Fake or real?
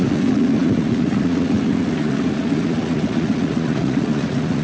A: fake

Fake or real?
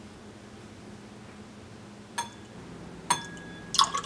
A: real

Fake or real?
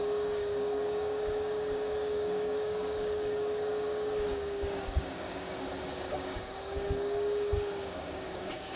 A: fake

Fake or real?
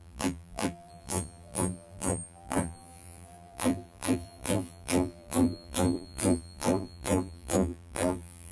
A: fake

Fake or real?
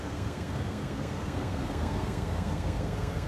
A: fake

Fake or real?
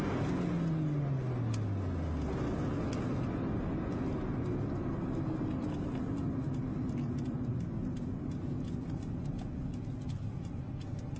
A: real